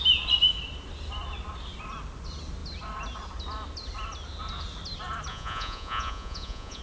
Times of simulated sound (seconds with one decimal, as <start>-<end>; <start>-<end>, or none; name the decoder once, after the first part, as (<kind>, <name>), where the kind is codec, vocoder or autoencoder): 5.3-6.8 (vocoder, Vocos)